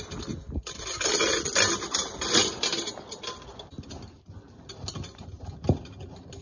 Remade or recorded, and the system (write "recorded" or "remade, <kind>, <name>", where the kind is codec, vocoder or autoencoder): recorded